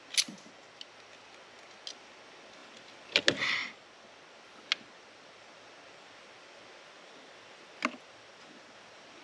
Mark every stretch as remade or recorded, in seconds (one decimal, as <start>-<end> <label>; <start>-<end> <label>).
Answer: 0.0-9.2 recorded